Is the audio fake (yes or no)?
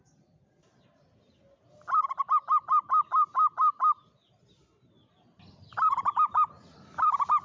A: no